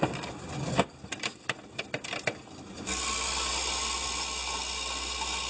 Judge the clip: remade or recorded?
recorded